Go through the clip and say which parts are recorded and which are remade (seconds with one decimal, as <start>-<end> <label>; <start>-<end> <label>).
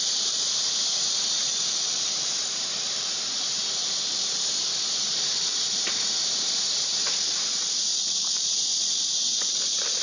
0.0-1.5 remade; 1.5-2.4 recorded; 2.4-7.9 remade; 7.9-8.9 recorded; 8.9-10.0 remade